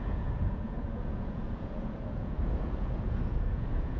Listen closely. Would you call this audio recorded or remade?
remade